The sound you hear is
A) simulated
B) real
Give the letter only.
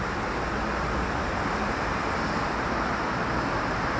B